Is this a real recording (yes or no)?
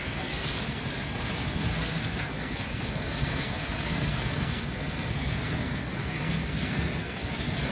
no